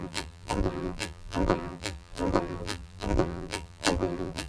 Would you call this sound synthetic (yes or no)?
yes